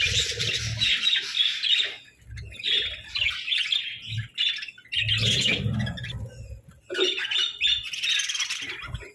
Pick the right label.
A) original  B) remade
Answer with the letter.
A